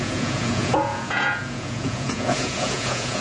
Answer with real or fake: fake